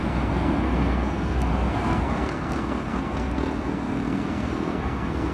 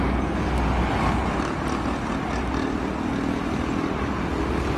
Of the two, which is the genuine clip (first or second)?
second